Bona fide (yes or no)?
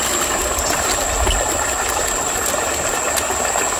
yes